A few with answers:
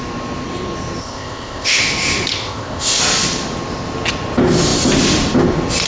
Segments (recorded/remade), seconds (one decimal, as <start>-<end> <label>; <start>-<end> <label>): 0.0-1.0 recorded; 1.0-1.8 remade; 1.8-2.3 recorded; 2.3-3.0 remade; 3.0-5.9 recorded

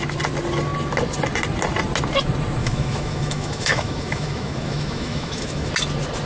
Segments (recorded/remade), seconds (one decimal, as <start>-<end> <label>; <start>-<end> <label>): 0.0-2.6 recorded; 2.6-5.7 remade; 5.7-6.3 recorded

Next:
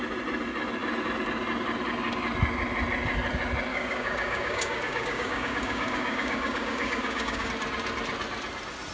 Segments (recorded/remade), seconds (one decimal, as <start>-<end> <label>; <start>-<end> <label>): 0.0-3.7 recorded; 3.7-7.5 remade; 7.5-8.9 recorded

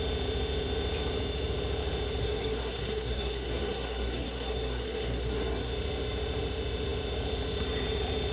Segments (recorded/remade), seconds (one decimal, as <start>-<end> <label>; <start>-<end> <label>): 0.0-2.2 recorded; 2.2-5.7 remade; 5.7-8.3 recorded

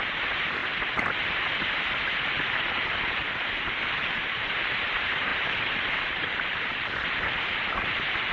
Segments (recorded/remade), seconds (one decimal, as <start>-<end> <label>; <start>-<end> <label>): 0.0-0.6 remade; 0.6-2.0 recorded; 2.0-8.3 remade